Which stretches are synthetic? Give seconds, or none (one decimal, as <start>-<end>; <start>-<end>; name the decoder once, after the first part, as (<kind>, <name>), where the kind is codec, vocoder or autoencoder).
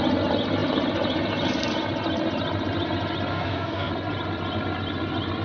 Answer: 3.3-3.9 (codec, SNAC)